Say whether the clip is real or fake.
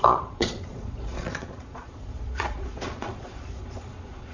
fake